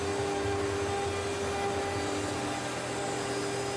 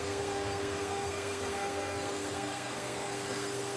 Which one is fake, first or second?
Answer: second